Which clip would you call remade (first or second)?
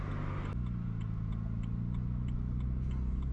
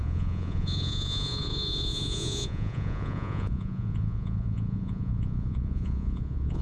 second